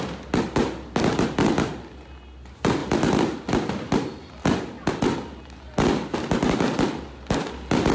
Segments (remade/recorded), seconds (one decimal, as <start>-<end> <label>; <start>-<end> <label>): 0.0-7.9 recorded